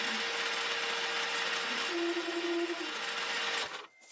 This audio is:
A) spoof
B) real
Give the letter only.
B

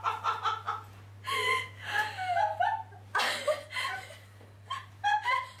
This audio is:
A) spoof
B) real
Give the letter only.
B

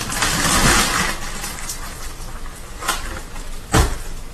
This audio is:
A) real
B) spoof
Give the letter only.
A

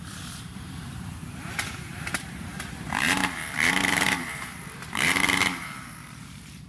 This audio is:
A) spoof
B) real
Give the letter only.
A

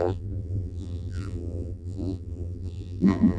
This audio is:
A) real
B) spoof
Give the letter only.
B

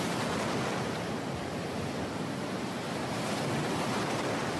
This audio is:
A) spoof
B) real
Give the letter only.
B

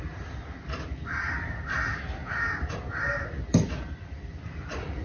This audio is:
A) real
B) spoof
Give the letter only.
A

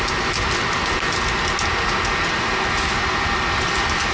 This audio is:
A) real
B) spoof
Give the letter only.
A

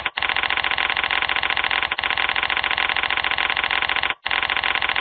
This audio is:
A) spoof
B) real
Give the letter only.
B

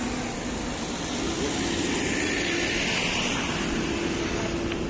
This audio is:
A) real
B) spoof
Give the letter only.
A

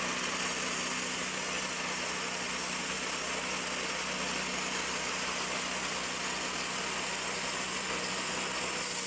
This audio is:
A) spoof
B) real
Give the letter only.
B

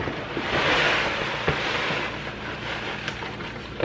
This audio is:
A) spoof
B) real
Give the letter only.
B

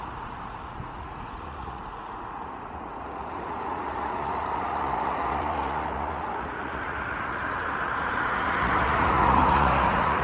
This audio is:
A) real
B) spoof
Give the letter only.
B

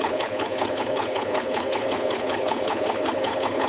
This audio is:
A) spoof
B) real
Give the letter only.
A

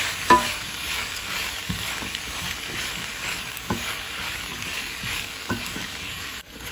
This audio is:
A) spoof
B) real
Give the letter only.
A